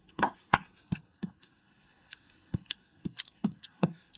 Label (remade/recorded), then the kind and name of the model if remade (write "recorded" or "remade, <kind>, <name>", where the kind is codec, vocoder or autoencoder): remade, codec, SNAC